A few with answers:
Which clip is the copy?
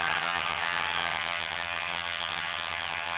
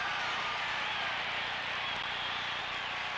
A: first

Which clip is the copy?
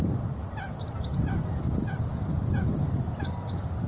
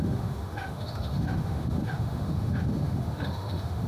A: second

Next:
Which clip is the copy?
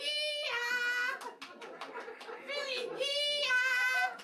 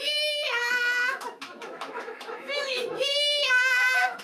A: second